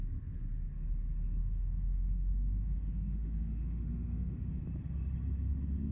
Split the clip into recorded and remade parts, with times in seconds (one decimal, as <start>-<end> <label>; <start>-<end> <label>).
0.0-1.4 recorded; 1.4-4.6 remade; 4.6-5.9 recorded